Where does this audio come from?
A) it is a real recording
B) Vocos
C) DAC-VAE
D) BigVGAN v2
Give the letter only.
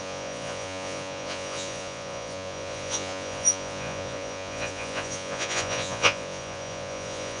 B